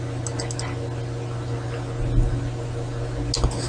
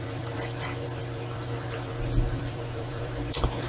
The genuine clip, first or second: first